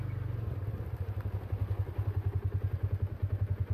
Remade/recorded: recorded